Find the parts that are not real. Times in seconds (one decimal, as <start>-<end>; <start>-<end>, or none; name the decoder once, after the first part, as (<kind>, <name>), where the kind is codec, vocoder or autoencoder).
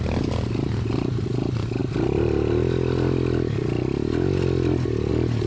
none